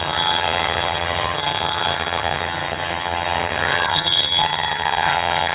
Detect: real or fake fake